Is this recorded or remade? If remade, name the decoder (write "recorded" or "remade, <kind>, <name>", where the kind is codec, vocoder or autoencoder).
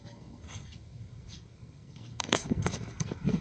remade, codec, SNAC